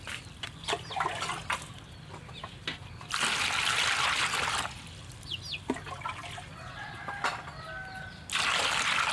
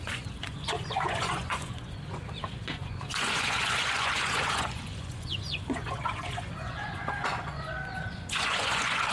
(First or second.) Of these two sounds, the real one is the first